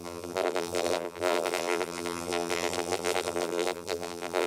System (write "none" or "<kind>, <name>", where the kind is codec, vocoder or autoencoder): vocoder, BigVGAN v2